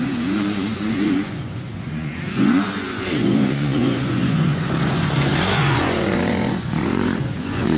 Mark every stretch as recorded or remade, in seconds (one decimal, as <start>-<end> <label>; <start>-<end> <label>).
0.0-7.8 remade